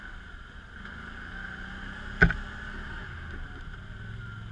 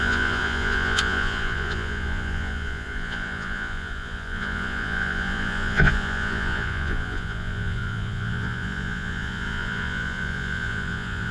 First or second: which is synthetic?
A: second